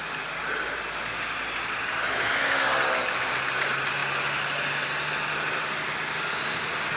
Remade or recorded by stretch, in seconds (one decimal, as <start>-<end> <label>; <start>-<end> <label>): 0.0-7.0 recorded